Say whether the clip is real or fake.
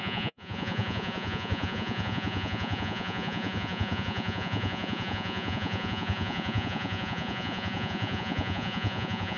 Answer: fake